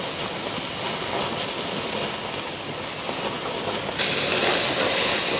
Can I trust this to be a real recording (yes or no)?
yes